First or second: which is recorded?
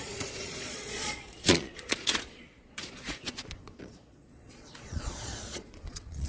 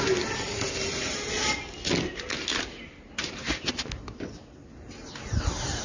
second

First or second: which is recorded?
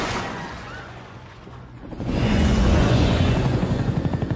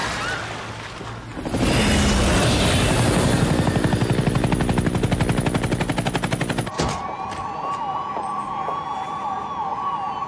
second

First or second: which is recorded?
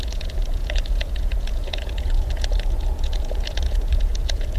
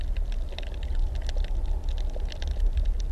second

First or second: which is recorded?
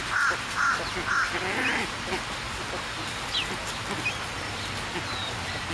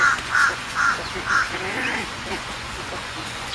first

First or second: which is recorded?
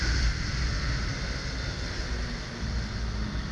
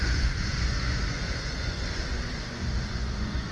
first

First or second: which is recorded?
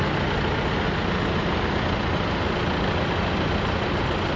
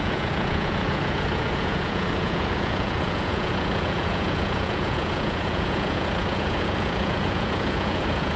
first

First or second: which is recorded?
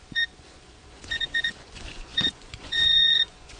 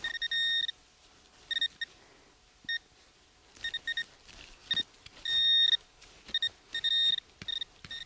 second